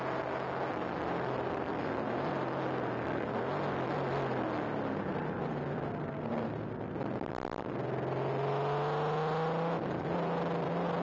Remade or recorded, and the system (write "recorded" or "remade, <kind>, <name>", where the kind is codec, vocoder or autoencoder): recorded